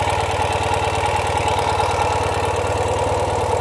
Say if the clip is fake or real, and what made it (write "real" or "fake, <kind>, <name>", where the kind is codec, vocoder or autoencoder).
real